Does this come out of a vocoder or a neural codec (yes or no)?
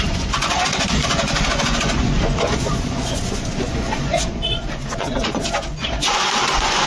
yes